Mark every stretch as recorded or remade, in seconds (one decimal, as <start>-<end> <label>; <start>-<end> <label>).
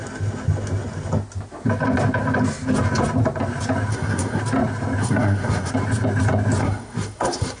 0.0-3.9 recorded; 3.9-4.4 remade; 4.4-5.0 recorded; 5.0-5.7 remade; 5.7-6.6 recorded; 6.6-7.6 remade